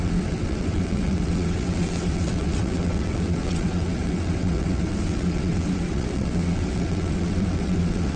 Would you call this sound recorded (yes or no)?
no